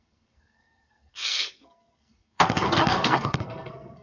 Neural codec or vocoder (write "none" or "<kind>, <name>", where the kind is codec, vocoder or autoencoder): codec, SNAC